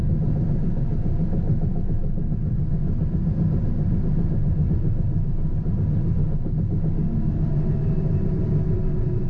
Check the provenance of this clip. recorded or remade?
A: recorded